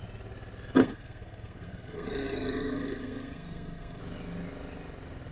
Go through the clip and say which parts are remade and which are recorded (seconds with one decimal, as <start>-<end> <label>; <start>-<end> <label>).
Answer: 0.0-0.8 recorded; 0.8-4.0 remade; 4.0-5.3 recorded